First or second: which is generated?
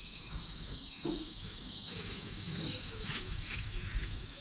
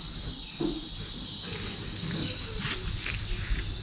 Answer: first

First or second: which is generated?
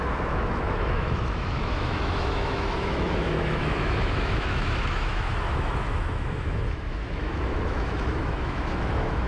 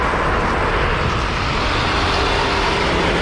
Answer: first